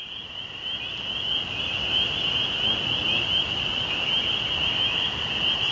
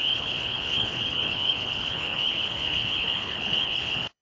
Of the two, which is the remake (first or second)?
second